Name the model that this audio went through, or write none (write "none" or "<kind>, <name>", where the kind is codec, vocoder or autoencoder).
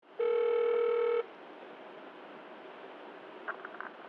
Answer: none